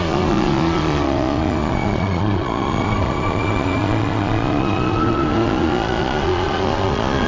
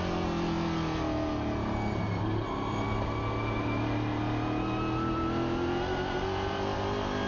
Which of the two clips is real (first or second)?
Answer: second